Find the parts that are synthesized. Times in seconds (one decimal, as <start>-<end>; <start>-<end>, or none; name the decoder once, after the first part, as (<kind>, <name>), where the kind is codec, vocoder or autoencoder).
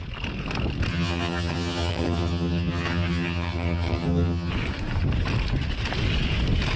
0.9-4.5 (vocoder, HiFi-GAN)